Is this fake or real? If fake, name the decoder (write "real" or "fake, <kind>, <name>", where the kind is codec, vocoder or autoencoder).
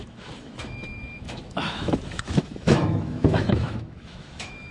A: fake, autoencoder, DAC-VAE